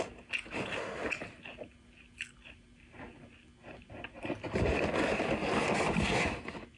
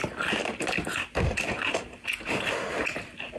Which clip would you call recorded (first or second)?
first